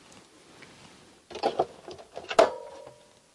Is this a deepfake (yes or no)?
no